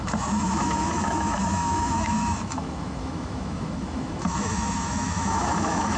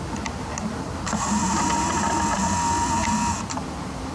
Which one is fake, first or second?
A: first